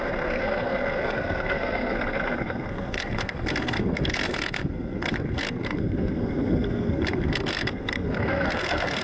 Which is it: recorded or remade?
remade